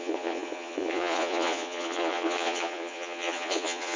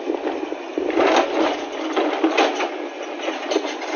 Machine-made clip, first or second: first